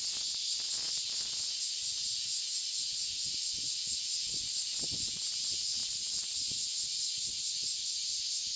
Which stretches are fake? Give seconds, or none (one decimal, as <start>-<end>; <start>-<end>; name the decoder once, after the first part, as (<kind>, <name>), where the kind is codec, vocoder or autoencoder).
none